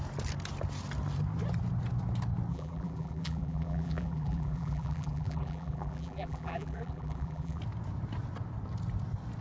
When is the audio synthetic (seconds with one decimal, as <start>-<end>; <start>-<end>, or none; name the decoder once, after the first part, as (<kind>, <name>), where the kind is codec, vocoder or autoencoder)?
2.5-7.6 (vocoder, BigVGAN v2)